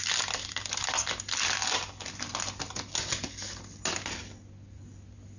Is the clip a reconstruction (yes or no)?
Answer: no